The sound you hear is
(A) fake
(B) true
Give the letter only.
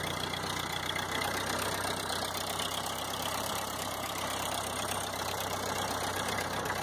A